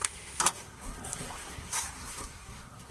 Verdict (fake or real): fake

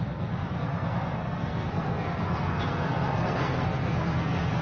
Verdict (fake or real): fake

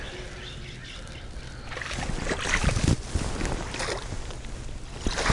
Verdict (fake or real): real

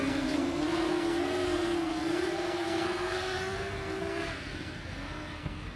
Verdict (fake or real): fake